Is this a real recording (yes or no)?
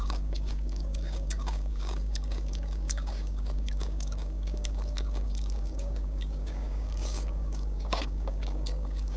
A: no